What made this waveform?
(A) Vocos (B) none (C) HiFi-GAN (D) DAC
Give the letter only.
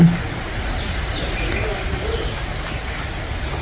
B